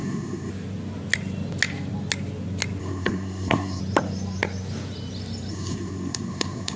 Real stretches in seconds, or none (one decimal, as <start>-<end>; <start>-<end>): 0.5-2.8; 3.8-5.5